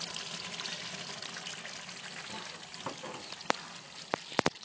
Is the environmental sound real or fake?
real